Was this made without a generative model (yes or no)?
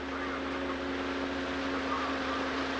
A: yes